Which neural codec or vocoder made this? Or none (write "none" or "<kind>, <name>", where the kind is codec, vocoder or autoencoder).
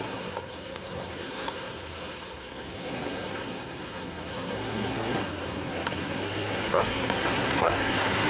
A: codec, SNAC